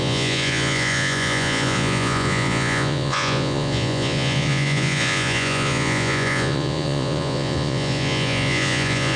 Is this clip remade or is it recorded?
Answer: remade